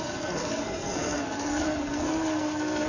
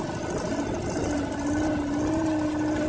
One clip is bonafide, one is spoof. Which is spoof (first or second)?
first